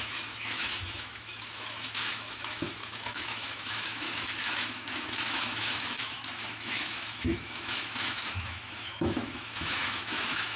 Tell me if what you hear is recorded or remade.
remade